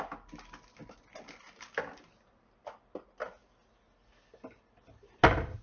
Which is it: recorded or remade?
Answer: recorded